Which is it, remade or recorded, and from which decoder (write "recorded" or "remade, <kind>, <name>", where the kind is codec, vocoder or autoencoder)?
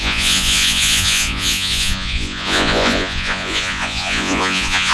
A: remade, vocoder, Vocos